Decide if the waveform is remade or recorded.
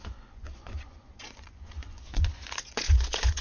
remade